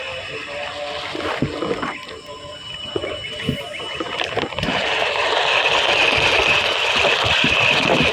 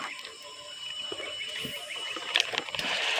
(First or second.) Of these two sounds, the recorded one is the first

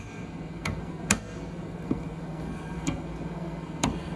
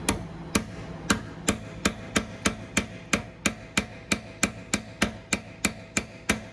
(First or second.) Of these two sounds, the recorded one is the second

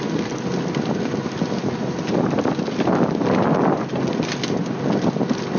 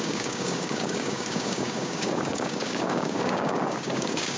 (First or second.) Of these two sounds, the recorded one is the first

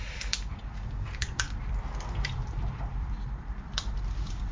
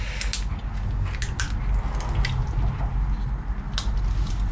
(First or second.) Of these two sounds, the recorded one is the second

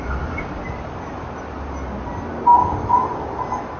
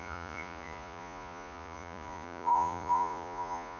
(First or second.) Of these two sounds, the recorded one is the first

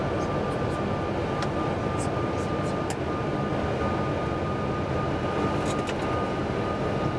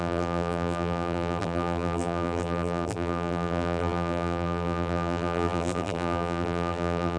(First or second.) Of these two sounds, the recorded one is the first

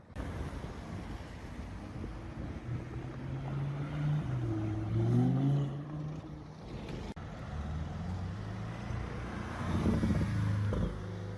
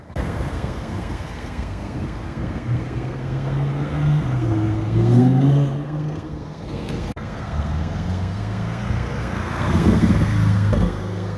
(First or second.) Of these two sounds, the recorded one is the first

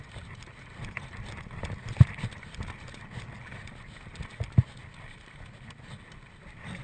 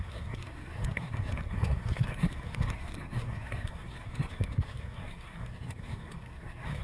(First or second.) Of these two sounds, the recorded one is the first